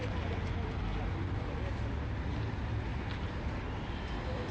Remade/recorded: recorded